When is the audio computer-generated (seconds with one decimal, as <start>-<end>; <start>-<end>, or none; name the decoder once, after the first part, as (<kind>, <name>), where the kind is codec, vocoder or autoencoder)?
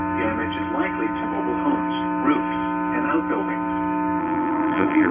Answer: 4.2-5.1 (vocoder, BigVGAN v2)